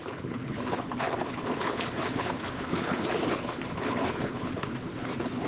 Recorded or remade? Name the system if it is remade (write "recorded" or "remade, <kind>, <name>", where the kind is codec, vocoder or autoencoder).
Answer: remade, codec, HILCodec